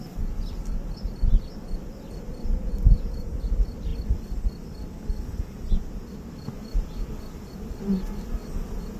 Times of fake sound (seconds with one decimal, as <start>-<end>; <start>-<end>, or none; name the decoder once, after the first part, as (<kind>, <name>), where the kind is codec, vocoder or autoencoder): none